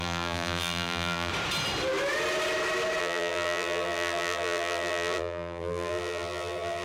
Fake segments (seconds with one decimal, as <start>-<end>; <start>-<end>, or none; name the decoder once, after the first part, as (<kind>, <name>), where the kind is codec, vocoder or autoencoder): 0.0-1.3 (vocoder, BigVGAN v2); 3.0-6.8